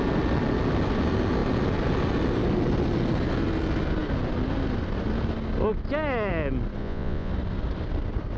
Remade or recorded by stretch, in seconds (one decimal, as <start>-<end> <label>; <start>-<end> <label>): 0.0-6.8 recorded; 6.8-7.3 remade; 7.3-8.4 recorded